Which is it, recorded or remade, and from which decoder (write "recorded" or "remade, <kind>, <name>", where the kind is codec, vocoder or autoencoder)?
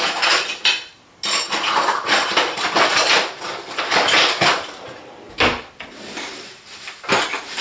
recorded